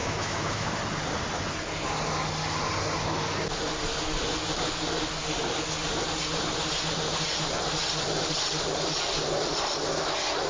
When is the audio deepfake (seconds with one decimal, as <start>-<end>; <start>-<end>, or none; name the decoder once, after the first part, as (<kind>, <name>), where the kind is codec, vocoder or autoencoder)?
0.0-0.7 (autoencoder, DAC-VAE)